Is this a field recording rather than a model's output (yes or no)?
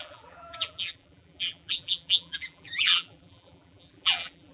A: no